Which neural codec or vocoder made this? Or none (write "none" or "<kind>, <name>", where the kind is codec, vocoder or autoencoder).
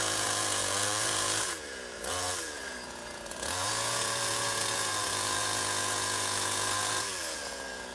vocoder, Vocos